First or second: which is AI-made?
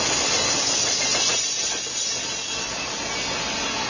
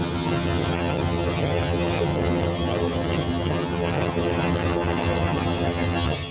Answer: second